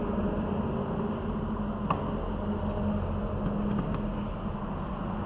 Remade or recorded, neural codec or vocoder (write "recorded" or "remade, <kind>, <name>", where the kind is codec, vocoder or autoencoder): recorded